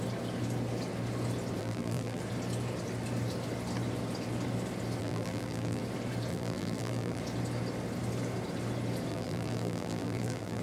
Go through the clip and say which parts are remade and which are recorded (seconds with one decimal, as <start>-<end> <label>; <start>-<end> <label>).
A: 0.0-1.6 recorded; 1.6-2.2 remade; 2.2-5.0 recorded; 5.0-5.8 remade; 5.8-6.3 recorded; 6.3-7.2 remade; 7.2-9.1 recorded; 9.1-10.6 remade